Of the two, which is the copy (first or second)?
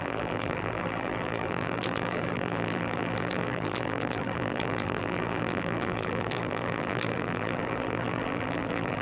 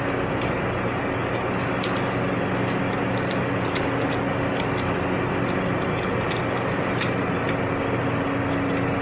first